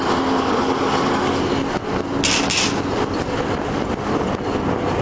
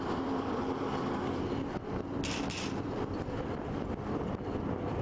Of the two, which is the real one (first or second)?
first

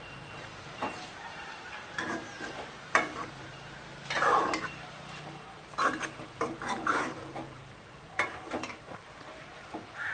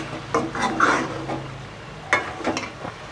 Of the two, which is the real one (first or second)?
second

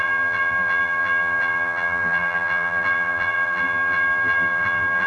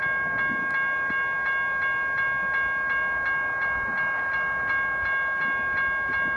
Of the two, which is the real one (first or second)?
second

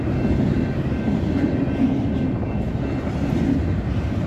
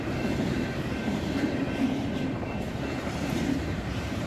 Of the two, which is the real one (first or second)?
first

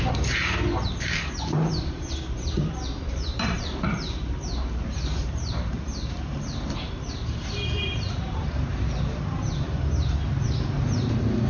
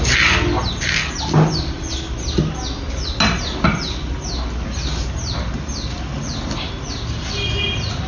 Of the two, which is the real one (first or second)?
second